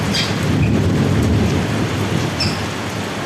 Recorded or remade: recorded